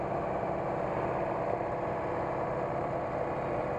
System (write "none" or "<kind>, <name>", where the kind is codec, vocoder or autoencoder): none